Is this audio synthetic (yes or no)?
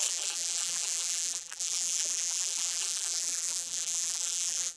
yes